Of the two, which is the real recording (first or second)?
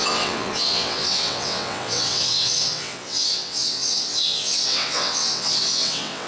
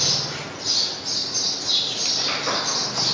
second